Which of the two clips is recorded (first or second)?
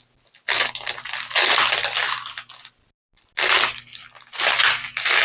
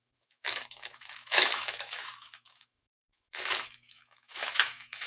first